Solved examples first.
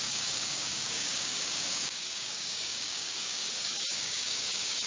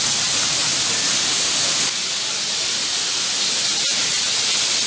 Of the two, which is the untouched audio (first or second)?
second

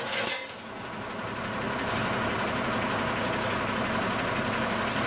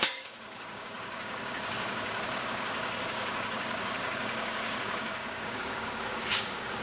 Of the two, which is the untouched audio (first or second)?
first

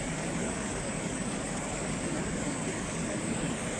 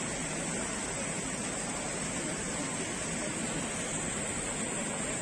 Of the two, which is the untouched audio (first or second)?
second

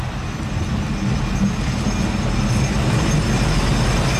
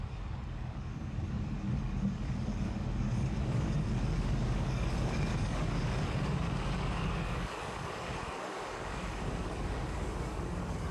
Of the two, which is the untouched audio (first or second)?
first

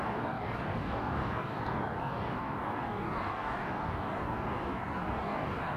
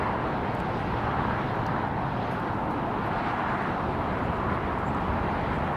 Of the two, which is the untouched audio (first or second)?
second